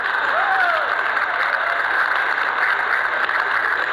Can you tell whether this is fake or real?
real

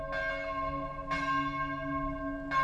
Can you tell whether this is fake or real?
real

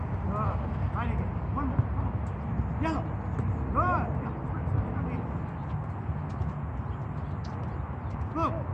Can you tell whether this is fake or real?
real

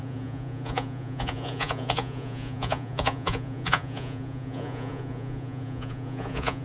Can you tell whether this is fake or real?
fake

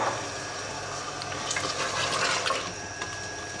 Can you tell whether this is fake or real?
real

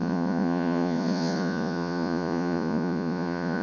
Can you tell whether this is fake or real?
fake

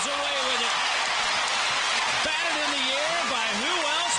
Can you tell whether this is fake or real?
real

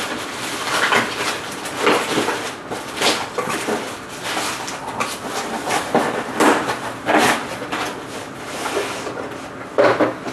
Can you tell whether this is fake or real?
real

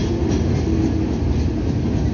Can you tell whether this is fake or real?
real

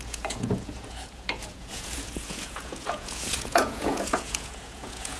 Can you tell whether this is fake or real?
fake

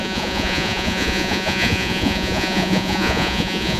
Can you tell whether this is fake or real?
fake